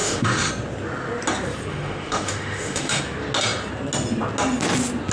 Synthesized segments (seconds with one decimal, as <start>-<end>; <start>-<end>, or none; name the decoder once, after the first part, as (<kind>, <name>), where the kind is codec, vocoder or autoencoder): 0.0-0.5 (autoencoder, DAC-VAE); 1.7-3.0